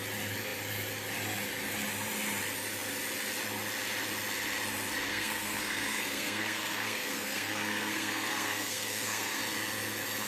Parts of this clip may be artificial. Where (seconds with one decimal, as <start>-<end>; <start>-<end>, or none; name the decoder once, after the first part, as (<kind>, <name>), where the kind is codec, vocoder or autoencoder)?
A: 5.1-9.4 (codec, SNAC)